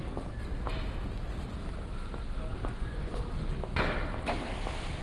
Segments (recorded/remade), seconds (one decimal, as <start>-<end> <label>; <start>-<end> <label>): 0.0-2.5 recorded; 2.5-3.2 remade; 3.2-5.0 recorded